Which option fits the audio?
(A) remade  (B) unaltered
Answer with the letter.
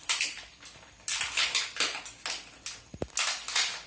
B